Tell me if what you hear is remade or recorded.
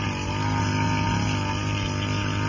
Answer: recorded